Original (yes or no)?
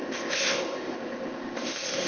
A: no